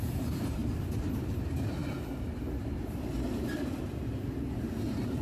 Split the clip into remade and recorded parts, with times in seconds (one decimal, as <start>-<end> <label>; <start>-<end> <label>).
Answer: 0.0-0.6 remade; 0.6-1.2 recorded; 1.2-1.8 remade; 1.8-4.4 recorded; 4.4-5.2 remade